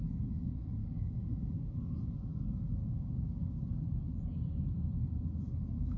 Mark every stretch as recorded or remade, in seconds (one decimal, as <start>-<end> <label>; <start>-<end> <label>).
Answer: 0.0-0.8 recorded; 0.8-1.5 remade; 1.5-2.8 recorded; 2.8-3.8 remade; 3.8-6.0 recorded

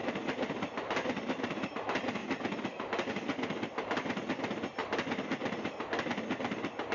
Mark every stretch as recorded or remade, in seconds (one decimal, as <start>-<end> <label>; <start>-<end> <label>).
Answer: 0.0-6.9 recorded

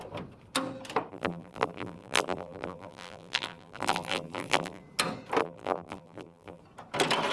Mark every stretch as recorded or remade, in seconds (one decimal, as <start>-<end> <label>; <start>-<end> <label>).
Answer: 0.0-1.1 recorded; 1.1-4.8 remade; 4.8-5.4 recorded; 5.4-6.6 remade; 6.6-7.3 recorded

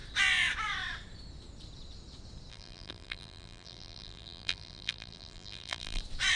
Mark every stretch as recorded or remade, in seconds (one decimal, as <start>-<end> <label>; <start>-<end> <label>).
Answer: 0.0-2.5 recorded; 2.5-6.0 remade; 6.0-6.4 recorded

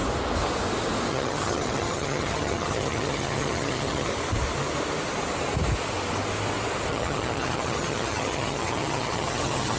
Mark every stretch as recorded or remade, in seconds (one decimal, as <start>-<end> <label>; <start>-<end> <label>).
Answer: 0.0-1.1 recorded; 1.1-4.1 remade; 4.1-6.9 recorded; 6.9-9.8 remade

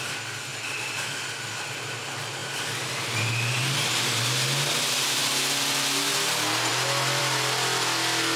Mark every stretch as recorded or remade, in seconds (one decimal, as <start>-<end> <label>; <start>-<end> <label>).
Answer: 0.0-8.4 recorded

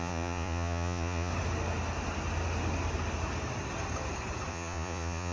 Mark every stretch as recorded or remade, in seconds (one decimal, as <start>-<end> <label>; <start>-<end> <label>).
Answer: 0.0-1.3 remade; 1.3-4.5 recorded; 4.5-5.3 remade